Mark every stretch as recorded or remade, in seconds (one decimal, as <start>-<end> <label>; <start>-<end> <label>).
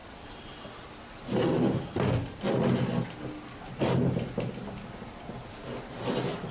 0.0-6.5 recorded